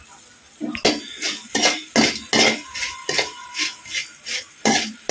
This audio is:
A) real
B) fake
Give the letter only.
A